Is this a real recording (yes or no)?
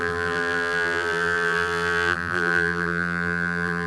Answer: no